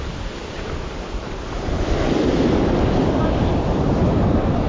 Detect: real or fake fake